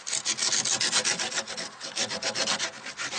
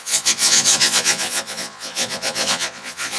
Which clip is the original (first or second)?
first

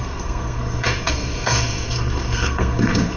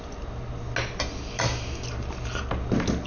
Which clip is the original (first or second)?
second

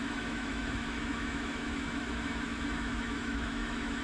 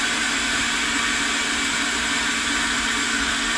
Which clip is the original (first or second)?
second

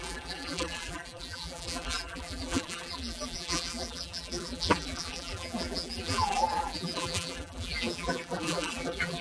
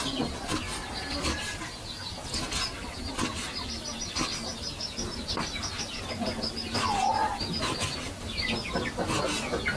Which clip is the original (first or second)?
second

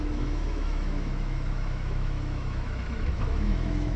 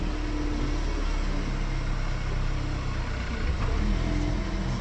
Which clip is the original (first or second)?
second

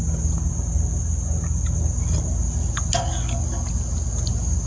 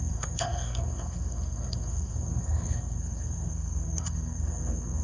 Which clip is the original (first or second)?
first